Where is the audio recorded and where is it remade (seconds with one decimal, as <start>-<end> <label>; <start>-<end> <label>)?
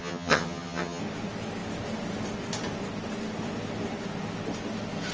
0.0-1.0 remade; 1.0-5.1 recorded